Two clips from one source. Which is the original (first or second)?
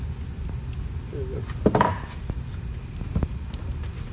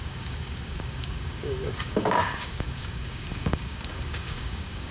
first